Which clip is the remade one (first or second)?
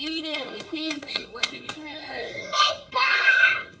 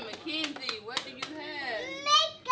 first